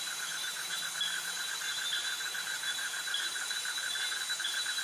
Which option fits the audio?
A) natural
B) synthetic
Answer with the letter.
B